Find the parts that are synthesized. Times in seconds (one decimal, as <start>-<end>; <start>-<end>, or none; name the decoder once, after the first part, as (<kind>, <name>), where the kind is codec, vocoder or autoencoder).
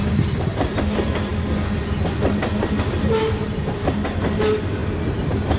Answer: none